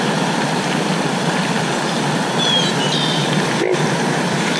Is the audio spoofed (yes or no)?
yes